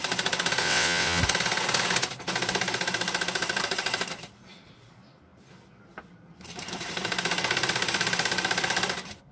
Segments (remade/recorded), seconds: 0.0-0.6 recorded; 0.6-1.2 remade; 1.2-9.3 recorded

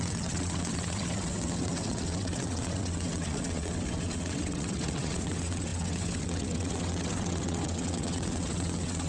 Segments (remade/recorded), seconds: 0.0-9.1 remade

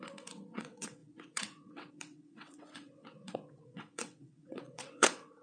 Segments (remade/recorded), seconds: 0.0-5.4 remade

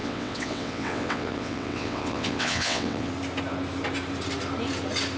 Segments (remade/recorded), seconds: 0.0-3.1 remade; 3.1-5.2 recorded

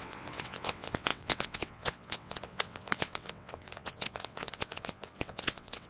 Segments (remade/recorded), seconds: 0.0-5.9 remade

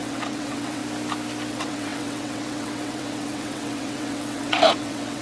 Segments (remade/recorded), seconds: 0.0-0.8 remade; 0.8-1.5 recorded; 1.5-5.2 remade

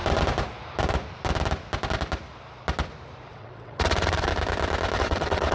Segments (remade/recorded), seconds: 0.0-3.3 recorded; 3.3-4.3 remade; 4.3-5.0 recorded; 5.0-5.5 remade